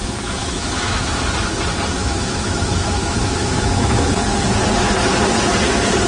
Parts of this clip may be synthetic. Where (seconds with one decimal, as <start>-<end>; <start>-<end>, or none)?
0.4-1.2; 2.0-4.1